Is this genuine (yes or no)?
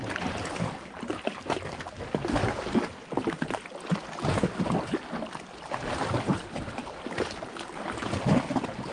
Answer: yes